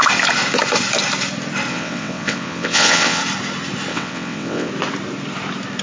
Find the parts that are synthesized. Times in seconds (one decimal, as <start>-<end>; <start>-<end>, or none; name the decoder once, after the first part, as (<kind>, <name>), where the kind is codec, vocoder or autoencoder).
1.7-3.2 (vocoder, WaveNeXt); 3.9-4.7